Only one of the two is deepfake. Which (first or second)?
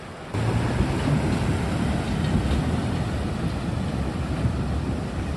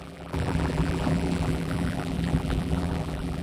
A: second